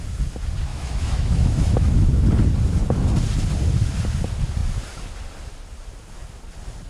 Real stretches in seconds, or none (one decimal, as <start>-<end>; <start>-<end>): 0.0-0.7; 2.1-6.9